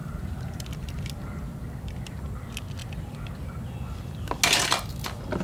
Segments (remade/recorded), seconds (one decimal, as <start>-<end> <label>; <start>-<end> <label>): 0.0-1.1 remade; 1.1-5.4 recorded